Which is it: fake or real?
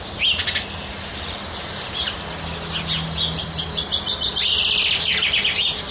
real